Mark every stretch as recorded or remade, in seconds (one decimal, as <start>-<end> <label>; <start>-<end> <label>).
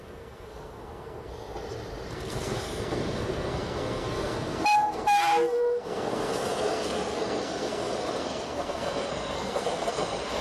0.0-1.3 remade; 1.3-2.1 recorded; 2.1-10.4 remade